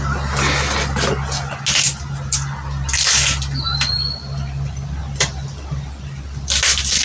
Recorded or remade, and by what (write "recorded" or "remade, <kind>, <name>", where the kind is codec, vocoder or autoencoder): recorded